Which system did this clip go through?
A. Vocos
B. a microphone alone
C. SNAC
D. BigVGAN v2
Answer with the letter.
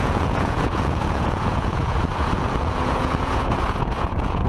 A